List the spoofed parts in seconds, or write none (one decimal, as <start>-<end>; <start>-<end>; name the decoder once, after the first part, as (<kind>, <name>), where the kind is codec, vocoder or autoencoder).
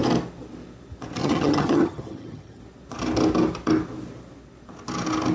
1.2-2.6 (vocoder, HiFi-GAN)